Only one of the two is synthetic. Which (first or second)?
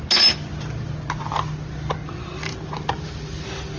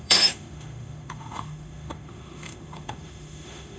second